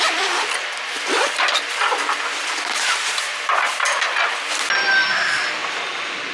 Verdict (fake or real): fake